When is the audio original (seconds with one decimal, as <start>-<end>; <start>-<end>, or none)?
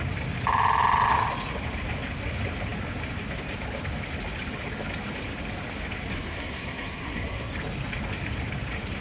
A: 0.0-6.1; 7.5-9.0